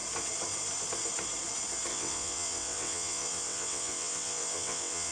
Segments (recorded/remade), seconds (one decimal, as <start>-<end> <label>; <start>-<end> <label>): 0.0-1.9 recorded; 1.9-5.1 remade